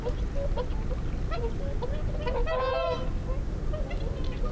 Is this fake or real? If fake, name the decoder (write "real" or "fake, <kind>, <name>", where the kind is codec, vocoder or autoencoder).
real